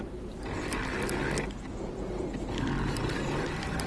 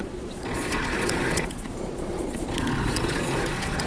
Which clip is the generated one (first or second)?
second